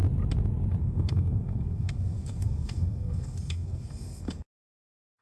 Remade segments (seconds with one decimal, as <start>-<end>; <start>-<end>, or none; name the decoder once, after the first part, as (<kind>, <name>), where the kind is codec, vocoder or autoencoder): 0.8-5.2 (codec, SNAC)